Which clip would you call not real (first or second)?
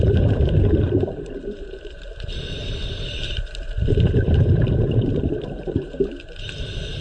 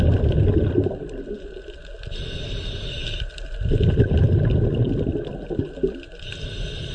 first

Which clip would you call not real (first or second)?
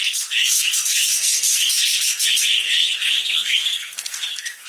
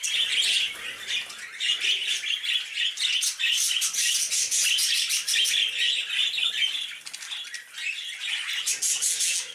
first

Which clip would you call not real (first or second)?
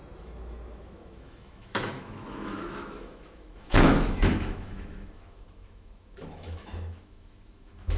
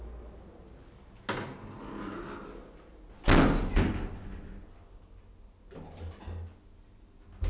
first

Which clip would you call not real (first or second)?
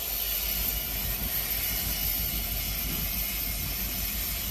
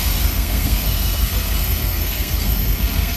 second